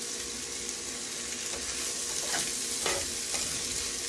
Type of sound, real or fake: real